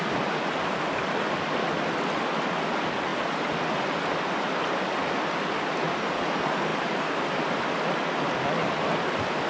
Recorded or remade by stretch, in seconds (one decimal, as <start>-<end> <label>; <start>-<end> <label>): 0.0-3.1 recorded; 3.1-5.1 remade; 5.1-6.7 recorded; 6.7-7.8 remade; 7.8-9.5 recorded